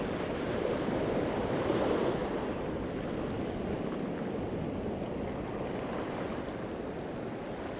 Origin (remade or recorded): recorded